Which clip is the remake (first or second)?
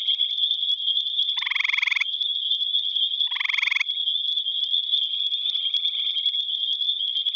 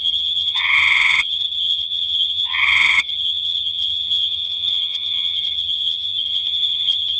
second